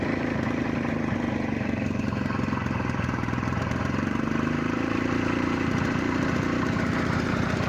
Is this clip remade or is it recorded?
remade